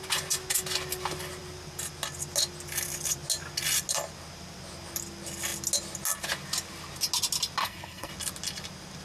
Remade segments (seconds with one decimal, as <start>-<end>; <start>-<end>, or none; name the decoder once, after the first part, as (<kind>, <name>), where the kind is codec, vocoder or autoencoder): 7.6-8.1 (codec, SNAC)